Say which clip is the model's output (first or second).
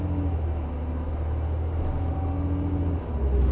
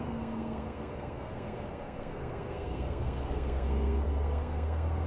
second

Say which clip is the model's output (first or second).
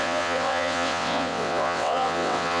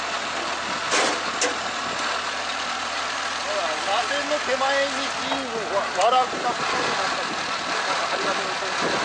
first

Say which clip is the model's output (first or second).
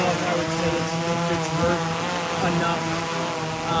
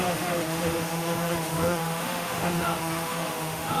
second